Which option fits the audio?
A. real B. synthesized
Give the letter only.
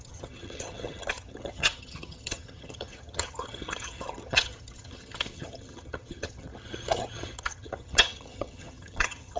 B